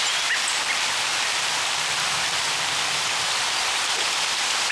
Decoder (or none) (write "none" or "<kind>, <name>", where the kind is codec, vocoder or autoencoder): vocoder, BigVGAN v2